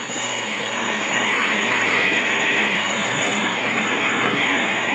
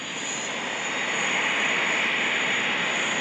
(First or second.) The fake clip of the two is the first